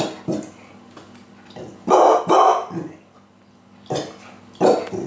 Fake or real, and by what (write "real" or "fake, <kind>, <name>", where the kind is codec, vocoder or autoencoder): real